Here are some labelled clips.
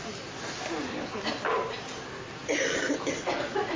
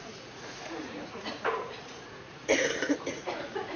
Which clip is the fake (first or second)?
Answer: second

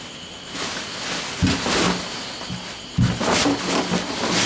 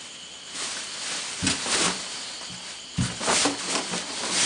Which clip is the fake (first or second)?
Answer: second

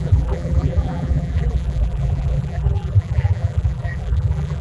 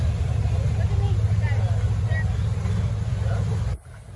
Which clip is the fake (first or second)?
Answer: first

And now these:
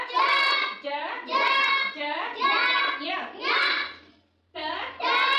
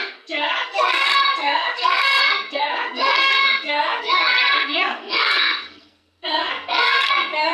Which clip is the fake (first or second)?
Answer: second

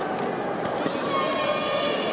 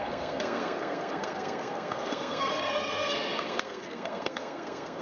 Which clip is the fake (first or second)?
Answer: second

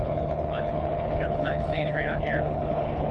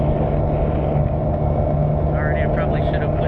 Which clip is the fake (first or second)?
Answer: first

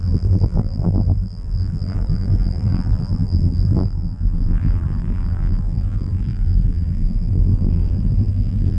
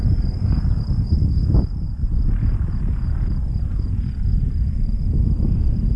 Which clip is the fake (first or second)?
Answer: first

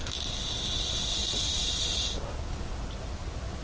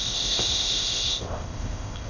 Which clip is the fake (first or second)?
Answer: second